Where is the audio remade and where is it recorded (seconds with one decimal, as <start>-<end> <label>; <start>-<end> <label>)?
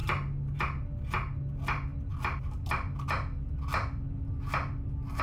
0.0-5.2 recorded